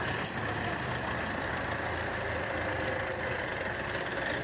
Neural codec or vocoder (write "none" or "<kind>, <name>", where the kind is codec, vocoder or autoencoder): none